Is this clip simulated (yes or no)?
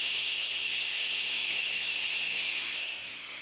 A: yes